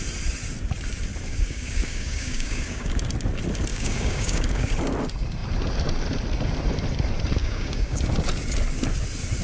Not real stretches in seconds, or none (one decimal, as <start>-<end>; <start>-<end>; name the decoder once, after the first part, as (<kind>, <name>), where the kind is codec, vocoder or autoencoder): 1.3-2.9 (codec, DAC); 3.7-4.8; 7.4-8.0